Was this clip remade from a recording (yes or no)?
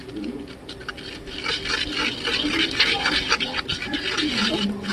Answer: yes